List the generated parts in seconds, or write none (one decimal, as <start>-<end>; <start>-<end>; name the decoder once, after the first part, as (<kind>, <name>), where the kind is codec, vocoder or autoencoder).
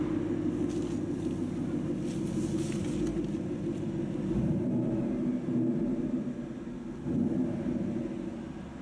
none